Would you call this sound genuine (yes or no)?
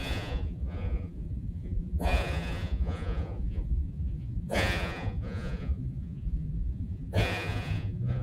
no